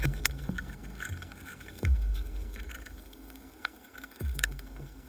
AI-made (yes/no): yes